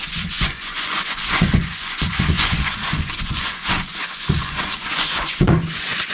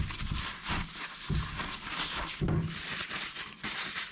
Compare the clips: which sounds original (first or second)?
second